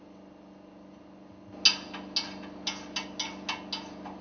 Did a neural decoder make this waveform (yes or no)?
no